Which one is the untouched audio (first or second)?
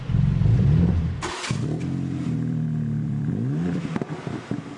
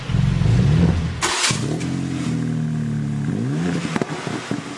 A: second